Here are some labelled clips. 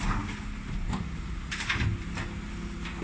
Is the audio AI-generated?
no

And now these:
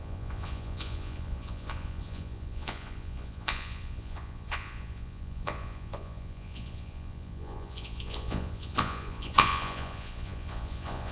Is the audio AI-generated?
yes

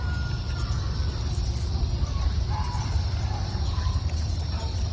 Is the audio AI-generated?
no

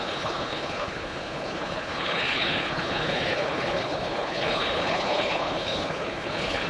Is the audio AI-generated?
yes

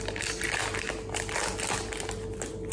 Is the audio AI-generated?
no